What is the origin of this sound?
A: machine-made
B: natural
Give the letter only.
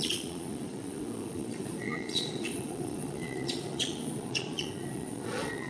A